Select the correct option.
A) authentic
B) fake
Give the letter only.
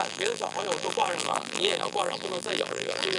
B